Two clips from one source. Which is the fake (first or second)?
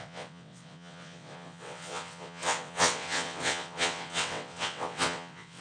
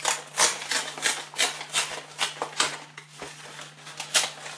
first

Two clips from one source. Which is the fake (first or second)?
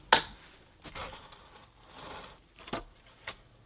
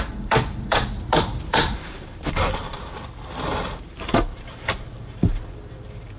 second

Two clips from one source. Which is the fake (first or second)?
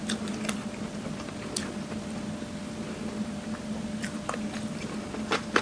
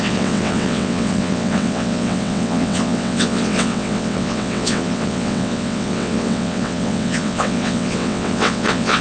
second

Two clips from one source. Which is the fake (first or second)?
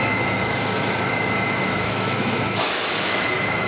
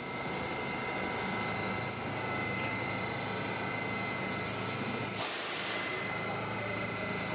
first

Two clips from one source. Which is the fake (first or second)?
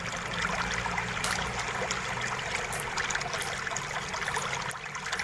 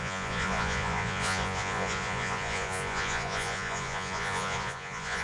second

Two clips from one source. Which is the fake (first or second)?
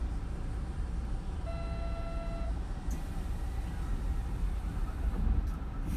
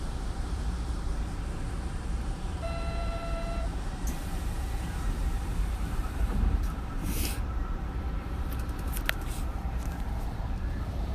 second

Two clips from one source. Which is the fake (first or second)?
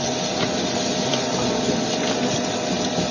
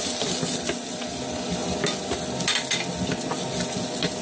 first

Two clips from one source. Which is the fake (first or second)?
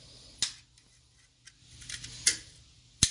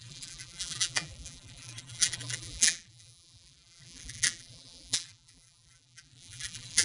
second